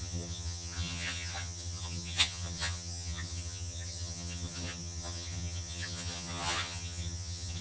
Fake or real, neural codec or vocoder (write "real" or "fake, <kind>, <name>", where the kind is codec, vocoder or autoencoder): fake, vocoder, HiFi-GAN